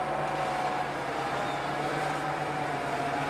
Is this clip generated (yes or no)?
no